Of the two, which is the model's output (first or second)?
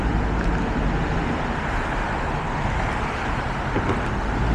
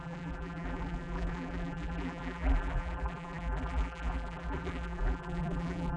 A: second